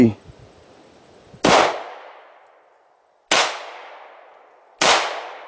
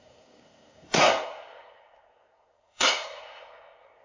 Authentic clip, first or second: first